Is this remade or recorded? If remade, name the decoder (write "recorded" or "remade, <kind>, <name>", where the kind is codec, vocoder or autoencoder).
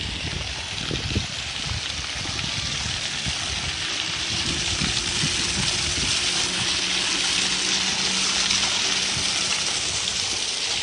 recorded